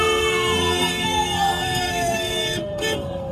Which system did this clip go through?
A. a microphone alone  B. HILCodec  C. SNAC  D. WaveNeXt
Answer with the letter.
C